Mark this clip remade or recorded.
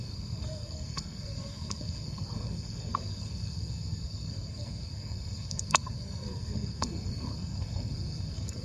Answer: remade